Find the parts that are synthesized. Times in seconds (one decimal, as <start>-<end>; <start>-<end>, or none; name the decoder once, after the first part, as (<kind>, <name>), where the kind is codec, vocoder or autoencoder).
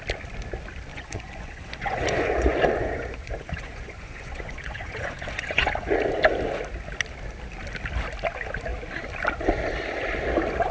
0.9-5.9 (vocoder, Vocos)